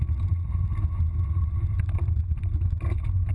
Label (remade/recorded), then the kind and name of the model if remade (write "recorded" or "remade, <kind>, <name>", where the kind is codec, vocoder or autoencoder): recorded